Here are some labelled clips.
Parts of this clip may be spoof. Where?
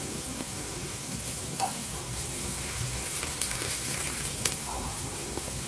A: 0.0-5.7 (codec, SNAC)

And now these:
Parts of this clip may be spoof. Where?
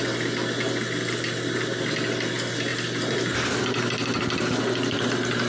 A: none